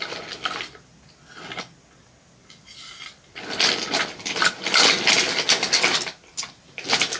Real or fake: real